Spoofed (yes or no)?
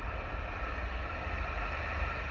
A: no